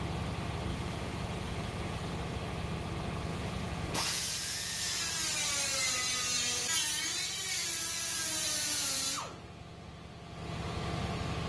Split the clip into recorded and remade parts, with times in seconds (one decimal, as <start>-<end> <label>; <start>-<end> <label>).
0.0-0.7 recorded; 0.7-2.1 remade; 2.1-3.3 recorded; 3.3-5.0 remade; 5.0-7.6 recorded; 7.6-9.0 remade; 9.0-11.5 recorded